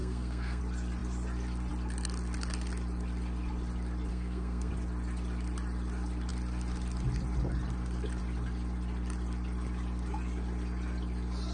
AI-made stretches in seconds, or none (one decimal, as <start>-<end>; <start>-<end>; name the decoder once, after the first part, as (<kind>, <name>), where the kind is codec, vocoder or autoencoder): 0.0-0.6 (codec, SNAC); 4.1-4.7